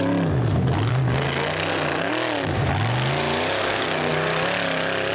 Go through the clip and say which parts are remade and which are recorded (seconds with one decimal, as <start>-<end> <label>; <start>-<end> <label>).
0.0-0.9 recorded; 0.9-2.1 remade; 2.1-3.6 recorded; 3.6-4.1 remade; 4.1-5.1 recorded